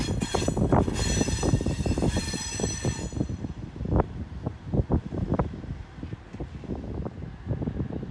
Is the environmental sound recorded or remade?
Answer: recorded